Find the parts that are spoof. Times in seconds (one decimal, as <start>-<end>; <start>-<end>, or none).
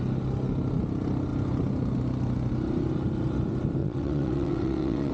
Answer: 3.8-5.1